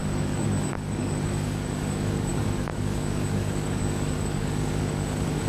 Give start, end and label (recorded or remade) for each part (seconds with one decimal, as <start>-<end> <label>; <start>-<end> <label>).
0.0-5.5 remade